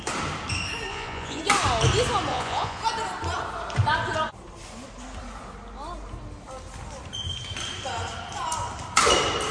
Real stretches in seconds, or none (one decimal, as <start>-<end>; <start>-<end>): 0.0-0.9; 1.4-2.3; 2.8-9.5